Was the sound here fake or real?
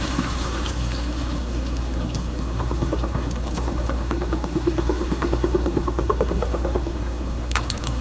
fake